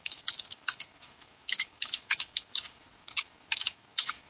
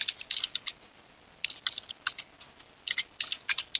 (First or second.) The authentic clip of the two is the second